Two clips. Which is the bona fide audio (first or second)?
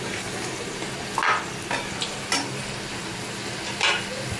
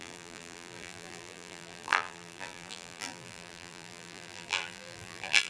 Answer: first